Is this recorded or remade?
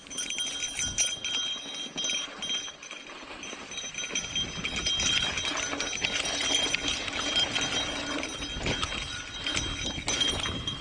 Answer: recorded